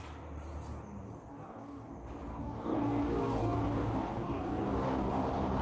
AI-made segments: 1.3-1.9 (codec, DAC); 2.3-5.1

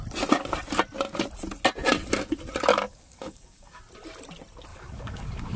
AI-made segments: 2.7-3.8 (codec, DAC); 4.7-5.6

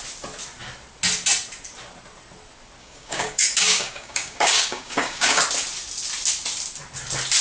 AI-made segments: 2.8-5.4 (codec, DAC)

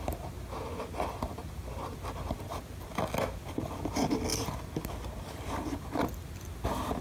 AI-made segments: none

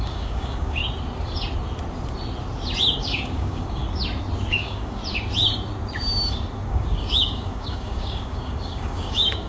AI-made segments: 0.0-0.8 (codec, DAC); 3.0-3.8; 4.5-5.0; 6.7-9.5

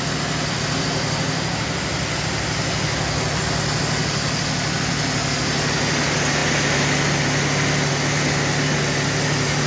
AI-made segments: none